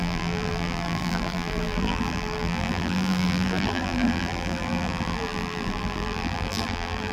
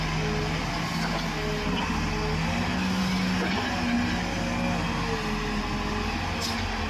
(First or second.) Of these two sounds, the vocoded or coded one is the first